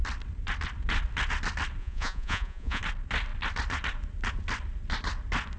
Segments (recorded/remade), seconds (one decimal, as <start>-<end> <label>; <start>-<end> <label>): 0.0-1.8 recorded; 1.8-2.8 remade; 2.8-5.6 recorded